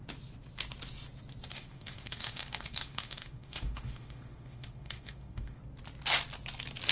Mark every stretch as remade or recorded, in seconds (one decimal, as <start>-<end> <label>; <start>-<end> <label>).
0.0-1.5 recorded; 1.5-5.6 remade; 5.6-6.9 recorded